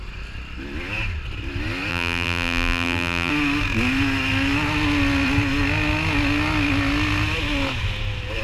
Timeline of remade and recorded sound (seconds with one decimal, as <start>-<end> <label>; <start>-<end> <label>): 0.0-1.9 recorded; 1.9-3.3 remade; 3.3-8.4 recorded